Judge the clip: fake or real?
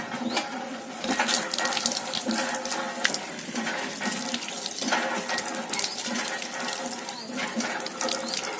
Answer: real